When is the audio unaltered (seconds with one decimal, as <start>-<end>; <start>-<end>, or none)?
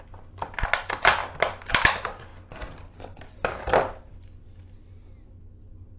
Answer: 0.0-6.0